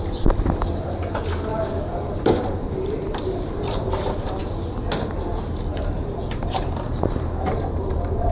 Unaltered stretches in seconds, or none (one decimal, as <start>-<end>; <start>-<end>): 0.0-1.5; 4.4-5.7